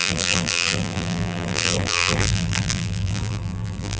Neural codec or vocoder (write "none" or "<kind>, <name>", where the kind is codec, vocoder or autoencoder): vocoder, BigVGAN v2